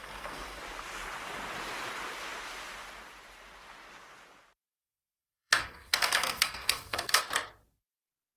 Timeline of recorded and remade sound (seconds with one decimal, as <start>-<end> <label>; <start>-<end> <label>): 0.0-0.6 remade; 0.6-4.8 recorded; 4.8-7.2 remade; 7.2-8.4 recorded